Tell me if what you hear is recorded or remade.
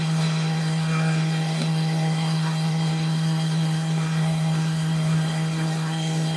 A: remade